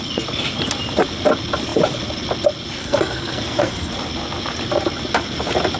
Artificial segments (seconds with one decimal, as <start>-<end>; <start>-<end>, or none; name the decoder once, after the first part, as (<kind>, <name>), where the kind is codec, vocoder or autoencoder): 2.8-3.9 (codec, SNAC)